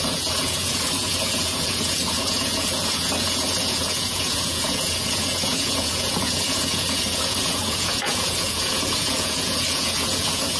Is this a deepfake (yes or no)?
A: yes